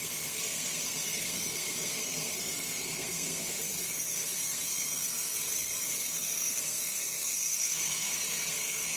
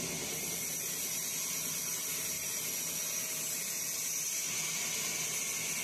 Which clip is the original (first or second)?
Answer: second